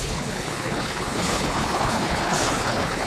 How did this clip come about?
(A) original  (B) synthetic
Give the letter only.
B